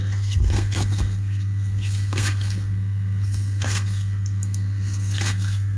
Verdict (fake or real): fake